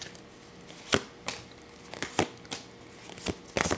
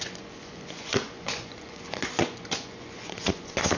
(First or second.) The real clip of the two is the first